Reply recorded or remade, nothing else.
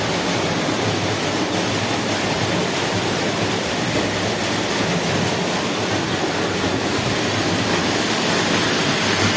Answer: recorded